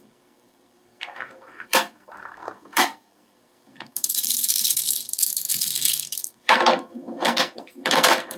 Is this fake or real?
fake